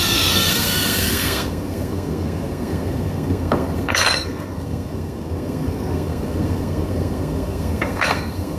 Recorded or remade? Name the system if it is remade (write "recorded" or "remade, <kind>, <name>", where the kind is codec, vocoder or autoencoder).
remade, codec, SNAC